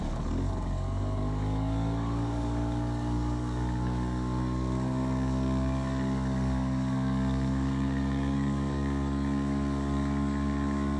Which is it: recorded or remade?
remade